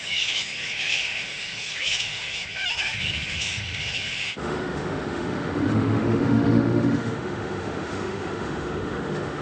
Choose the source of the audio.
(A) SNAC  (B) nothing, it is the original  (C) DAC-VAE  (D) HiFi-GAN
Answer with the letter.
C